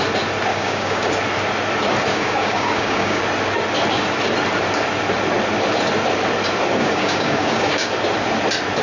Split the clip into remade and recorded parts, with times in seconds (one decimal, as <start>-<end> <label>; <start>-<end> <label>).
0.0-0.5 recorded; 0.5-1.1 remade; 1.1-2.1 recorded; 2.1-3.2 remade; 3.2-6.8 recorded; 6.8-7.9 remade; 7.9-8.8 recorded